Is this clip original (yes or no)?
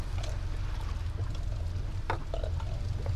yes